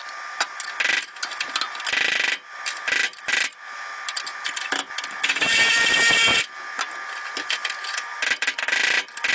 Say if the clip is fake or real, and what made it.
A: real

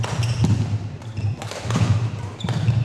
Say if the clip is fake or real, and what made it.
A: real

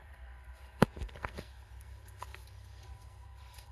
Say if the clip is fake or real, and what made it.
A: fake, codec, SNAC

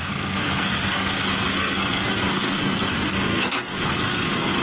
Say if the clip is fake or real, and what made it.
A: fake, codec, SNAC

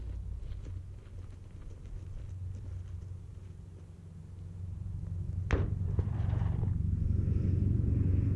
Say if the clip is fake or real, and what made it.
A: real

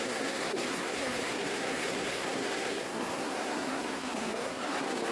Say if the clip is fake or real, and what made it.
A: fake, codec, SNAC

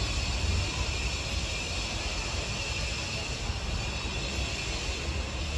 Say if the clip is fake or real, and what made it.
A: real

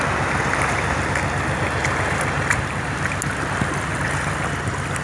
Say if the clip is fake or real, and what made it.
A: real